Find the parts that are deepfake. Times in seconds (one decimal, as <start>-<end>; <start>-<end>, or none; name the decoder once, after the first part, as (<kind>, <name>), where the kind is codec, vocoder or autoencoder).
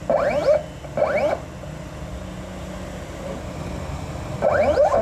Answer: none